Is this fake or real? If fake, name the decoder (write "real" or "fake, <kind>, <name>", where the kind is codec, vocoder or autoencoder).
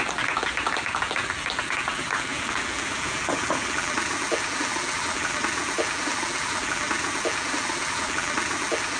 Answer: fake, vocoder, BigVGAN v2